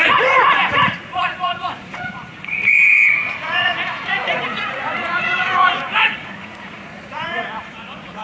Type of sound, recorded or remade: remade